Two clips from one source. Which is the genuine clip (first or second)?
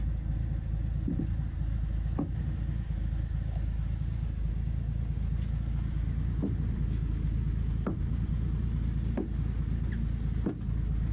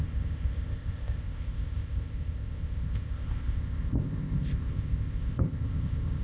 first